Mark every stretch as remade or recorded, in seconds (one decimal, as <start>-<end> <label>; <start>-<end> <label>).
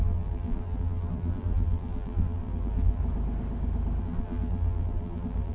0.0-3.0 remade; 3.0-4.0 recorded; 4.0-5.5 remade